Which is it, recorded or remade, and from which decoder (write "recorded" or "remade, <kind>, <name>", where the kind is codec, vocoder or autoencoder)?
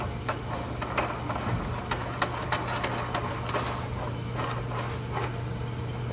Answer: recorded